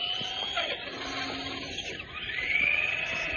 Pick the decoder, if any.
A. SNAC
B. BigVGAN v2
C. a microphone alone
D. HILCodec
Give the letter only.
C